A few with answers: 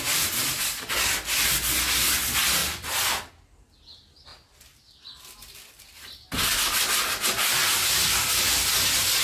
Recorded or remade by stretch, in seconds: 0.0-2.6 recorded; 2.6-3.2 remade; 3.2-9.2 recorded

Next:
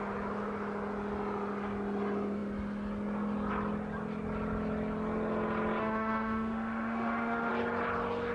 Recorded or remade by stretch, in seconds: 0.0-5.8 recorded; 5.8-7.5 remade; 7.5-8.3 recorded